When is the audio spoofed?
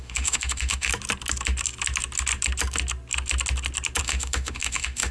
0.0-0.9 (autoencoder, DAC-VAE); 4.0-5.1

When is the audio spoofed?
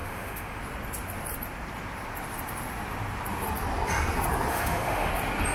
0.0-0.6 (autoencoder, DAC-VAE); 4.5-5.1